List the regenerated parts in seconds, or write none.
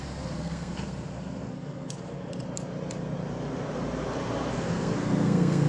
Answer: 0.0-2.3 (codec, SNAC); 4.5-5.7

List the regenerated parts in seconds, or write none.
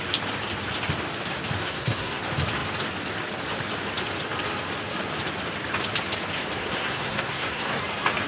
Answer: 1.6-2.2 (codec, SNAC); 6.6-7.8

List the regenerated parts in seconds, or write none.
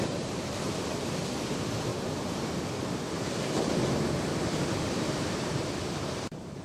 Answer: 0.0-1.9 (vocoder, BigVGAN v2); 3.2-6.6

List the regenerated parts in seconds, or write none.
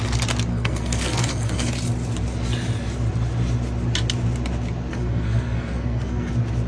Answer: 0.5-1.7 (codec, SNAC); 4.9-6.3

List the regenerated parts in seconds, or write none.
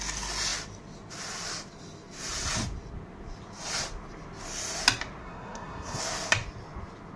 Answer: 5.2-6.0 (codec, SNAC)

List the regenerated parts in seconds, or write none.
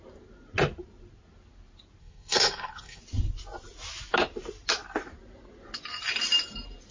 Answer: 2.0-3.0 (codec, SNAC)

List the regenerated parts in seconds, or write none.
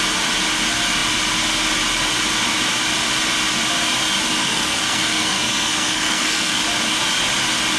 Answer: 4.4-6.6 (codec, SNAC)